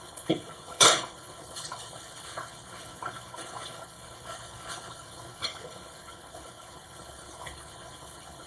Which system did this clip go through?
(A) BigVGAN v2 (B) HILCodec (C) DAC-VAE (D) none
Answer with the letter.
B